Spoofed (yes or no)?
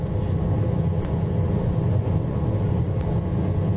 yes